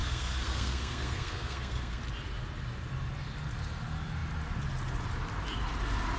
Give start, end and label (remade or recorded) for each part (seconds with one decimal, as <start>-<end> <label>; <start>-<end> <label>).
0.0-2.0 remade; 2.0-6.2 recorded